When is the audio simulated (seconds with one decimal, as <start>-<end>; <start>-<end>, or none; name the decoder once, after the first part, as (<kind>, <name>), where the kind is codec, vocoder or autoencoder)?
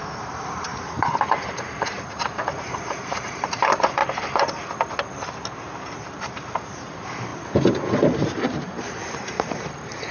0.0-4.0 (vocoder, BigVGAN v2); 6.2-10.1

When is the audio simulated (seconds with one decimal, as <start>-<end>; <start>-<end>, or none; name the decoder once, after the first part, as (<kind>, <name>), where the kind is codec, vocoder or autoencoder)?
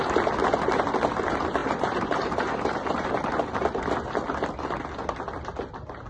1.6-3.1 (vocoder, BigVGAN v2)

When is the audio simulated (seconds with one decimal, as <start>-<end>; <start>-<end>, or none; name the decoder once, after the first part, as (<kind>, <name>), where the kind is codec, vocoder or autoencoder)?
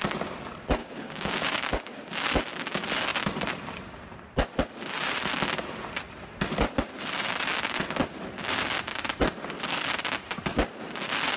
0.8-2.1 (codec, DAC)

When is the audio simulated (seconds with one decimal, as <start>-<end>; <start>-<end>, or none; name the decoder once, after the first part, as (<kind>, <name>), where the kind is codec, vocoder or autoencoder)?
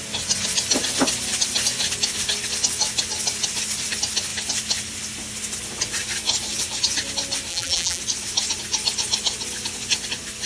7.5-8.0 (vocoder, BigVGAN v2)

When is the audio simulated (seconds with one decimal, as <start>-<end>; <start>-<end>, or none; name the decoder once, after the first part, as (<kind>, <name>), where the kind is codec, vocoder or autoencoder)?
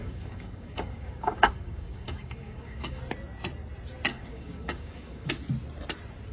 0.0-3.0 (codec, DAC); 4.1-5.3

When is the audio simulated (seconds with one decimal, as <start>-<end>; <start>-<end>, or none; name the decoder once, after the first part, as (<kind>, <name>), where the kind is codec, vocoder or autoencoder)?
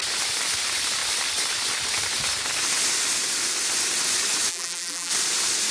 4.5-5.1 (vocoder, BigVGAN v2)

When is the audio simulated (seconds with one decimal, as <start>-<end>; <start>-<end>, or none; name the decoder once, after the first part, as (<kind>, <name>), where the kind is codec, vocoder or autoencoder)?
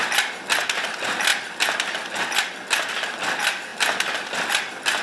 none